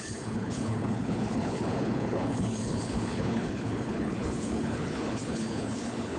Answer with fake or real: fake